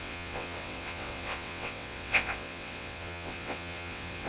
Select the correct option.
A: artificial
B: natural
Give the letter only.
A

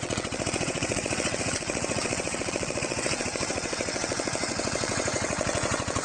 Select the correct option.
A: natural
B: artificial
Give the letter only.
B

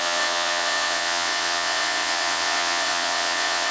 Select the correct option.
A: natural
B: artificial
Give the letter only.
B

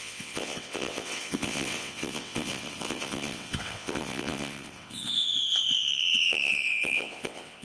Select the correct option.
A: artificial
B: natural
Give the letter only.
A